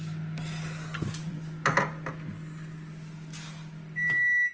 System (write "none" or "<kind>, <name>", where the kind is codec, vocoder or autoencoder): none